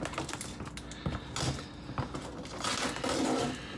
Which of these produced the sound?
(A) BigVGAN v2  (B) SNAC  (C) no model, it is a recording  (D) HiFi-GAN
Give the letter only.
C